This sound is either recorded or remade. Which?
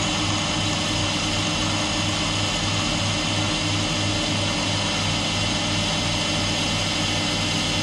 recorded